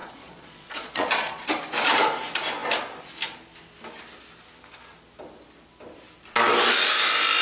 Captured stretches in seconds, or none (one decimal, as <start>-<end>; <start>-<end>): 1.5-7.4